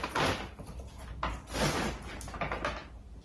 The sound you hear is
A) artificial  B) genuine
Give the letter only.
B